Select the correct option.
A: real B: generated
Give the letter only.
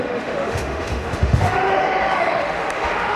B